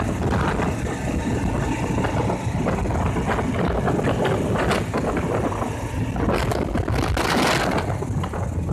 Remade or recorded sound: recorded